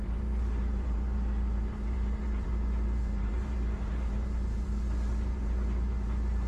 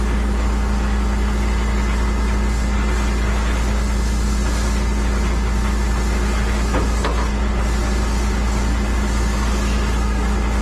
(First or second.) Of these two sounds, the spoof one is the first